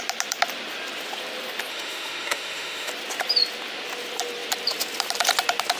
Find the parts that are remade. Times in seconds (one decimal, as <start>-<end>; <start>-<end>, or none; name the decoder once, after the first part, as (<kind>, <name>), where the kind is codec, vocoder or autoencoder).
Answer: 1.7-2.9 (autoencoder, DAC-VAE)